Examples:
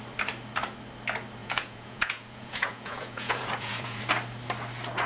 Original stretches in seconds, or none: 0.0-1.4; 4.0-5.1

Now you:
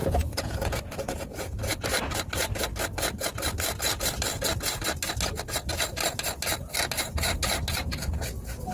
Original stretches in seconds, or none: 1.6-7.7

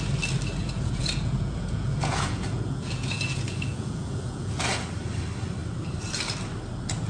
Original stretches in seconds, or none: 0.0-0.6; 4.9-7.1

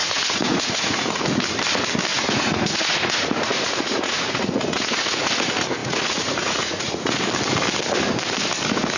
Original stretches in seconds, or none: 1.3-2.1; 5.3-5.8; 7.2-9.0